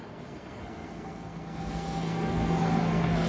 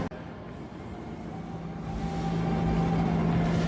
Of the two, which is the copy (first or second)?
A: first